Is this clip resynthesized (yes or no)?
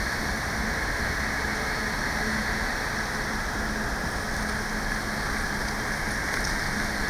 no